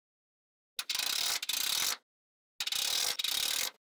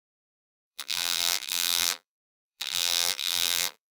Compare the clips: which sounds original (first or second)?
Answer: first